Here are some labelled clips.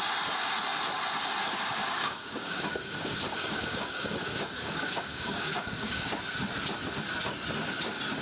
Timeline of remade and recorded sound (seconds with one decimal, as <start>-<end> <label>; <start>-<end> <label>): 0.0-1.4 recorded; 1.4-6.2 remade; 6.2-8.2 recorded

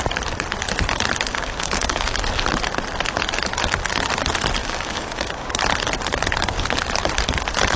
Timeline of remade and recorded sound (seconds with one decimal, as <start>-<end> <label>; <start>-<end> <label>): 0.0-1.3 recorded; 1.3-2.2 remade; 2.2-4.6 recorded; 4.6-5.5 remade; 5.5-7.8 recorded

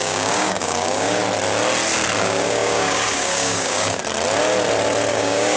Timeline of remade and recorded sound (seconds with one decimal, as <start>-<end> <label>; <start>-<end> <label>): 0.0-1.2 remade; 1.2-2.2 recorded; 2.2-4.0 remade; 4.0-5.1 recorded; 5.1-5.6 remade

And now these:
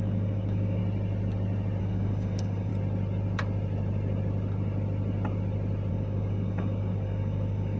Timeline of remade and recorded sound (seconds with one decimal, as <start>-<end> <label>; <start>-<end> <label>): 0.0-0.8 remade; 0.8-1.8 recorded; 1.8-2.7 remade; 2.7-5.9 recorded; 5.9-7.8 remade

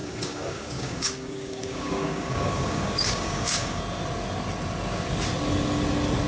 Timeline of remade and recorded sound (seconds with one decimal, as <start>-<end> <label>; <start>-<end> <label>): 0.0-3.8 remade; 3.8-6.3 recorded

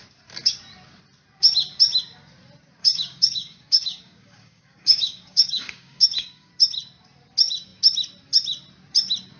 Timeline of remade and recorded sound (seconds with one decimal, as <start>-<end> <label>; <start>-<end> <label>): 0.0-2.8 recorded; 2.8-6.5 remade; 6.5-9.4 recorded

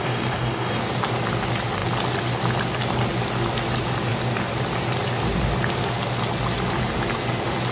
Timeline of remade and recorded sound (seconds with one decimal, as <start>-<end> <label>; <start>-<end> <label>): 0.0-0.8 remade; 0.8-7.7 recorded

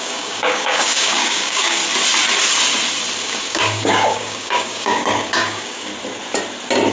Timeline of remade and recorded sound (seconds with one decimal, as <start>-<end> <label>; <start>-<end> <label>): 0.0-1.8 remade; 1.8-3.2 recorded; 3.2-5.9 remade; 5.9-6.9 recorded